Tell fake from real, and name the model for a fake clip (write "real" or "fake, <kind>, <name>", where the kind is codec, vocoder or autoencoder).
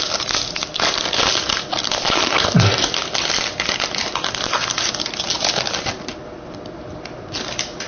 real